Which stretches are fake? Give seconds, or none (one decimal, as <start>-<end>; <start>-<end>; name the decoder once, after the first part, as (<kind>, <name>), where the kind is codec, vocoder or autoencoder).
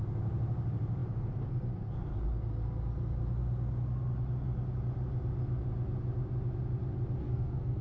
7.2-7.8 (codec, SNAC)